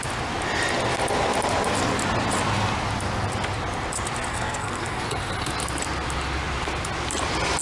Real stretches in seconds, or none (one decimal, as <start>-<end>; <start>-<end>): 0.0-4.3; 5.0-7.6